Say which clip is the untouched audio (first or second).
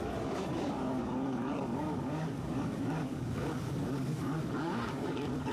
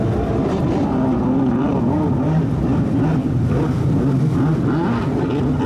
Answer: second